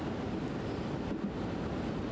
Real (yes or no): yes